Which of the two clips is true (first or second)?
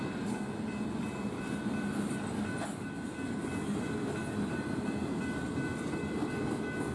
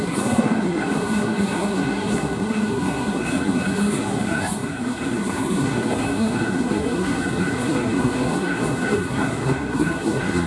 first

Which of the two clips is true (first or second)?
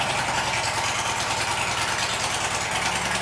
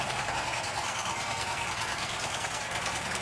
first